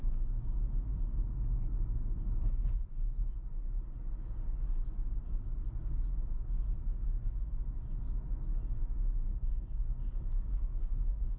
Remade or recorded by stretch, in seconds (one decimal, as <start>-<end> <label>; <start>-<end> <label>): 0.0-9.3 recorded; 9.3-11.4 remade